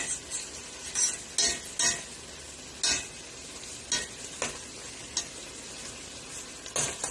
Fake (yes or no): no